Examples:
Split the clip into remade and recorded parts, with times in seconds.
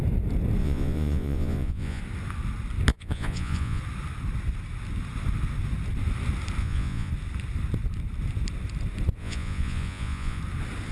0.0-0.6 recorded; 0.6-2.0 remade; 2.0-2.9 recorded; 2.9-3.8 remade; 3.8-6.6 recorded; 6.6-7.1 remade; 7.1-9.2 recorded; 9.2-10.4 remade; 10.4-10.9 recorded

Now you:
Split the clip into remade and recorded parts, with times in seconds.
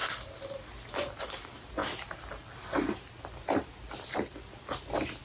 0.0-5.2 recorded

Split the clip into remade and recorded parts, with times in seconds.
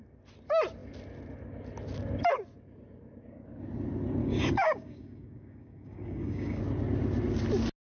0.0-4.2 recorded; 4.2-6.6 remade; 6.6-7.9 recorded